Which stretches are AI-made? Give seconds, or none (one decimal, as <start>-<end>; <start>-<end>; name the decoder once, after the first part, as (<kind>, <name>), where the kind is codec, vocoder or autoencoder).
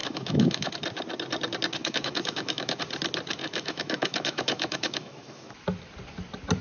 0.0-0.7 (autoencoder, DAC-VAE); 1.8-2.8; 3.4-5.5